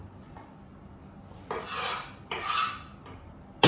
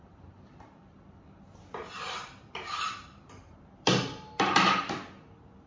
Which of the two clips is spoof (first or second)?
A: second